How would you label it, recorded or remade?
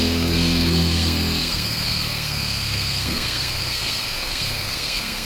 remade